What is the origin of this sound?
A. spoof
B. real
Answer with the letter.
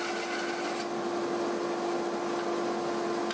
B